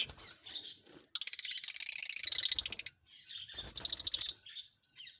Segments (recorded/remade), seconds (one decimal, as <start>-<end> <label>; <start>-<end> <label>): 0.0-5.2 recorded